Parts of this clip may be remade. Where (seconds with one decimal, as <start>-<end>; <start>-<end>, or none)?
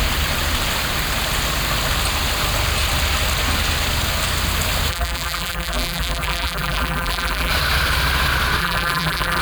4.9-7.5; 8.6-9.4